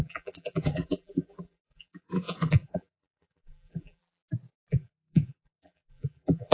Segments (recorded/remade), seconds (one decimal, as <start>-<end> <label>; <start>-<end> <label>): 0.0-4.0 remade; 4.0-4.7 recorded; 4.7-6.5 remade